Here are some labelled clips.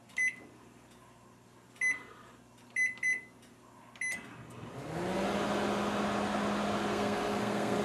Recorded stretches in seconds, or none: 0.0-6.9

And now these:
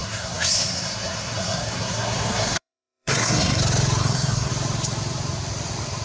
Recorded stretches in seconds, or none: 3.6-4.0; 4.5-6.0

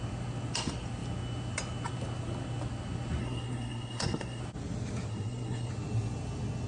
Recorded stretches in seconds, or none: 0.0-3.2; 4.4-5.1; 5.7-6.7

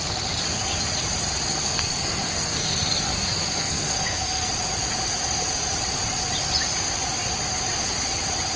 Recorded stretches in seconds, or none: 0.0-1.5; 4.5-8.6

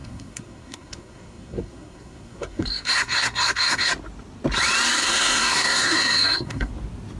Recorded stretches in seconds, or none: 3.9-5.0; 6.7-7.2

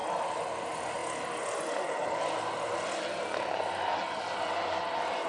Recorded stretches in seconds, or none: 0.0-5.3

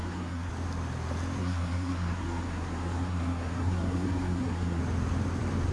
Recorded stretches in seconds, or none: 0.5-1.4; 4.8-5.7

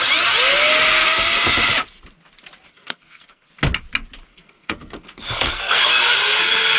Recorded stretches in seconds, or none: 0.0-2.7; 3.5-4.3